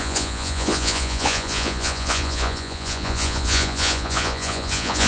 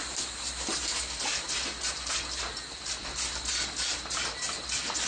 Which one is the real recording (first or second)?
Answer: second